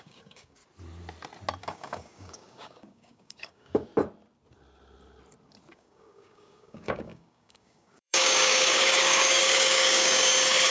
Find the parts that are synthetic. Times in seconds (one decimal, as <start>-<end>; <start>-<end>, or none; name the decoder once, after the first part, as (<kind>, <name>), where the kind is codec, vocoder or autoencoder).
0.0-0.6 (codec, DAC); 1.6-3.9; 5.7-10.7